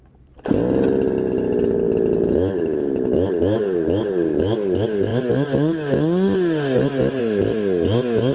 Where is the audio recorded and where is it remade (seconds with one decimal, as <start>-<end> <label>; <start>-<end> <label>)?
0.0-8.3 recorded